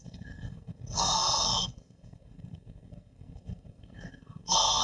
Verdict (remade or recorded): remade